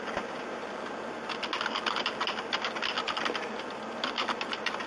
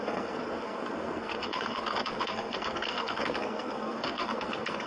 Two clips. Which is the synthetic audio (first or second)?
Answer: second